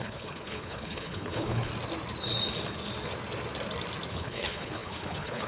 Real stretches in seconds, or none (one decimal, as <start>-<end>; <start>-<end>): 1.7-4.1